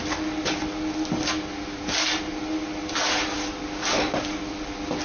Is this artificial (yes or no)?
no